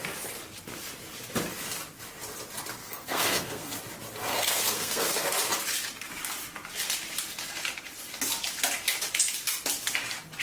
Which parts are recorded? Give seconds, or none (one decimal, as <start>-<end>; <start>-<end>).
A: 0.0-2.8; 3.8-4.3; 5.3-10.4

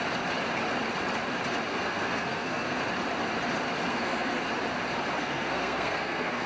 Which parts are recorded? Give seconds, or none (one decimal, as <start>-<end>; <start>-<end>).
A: 0.0-1.7; 2.8-3.9; 4.4-5.2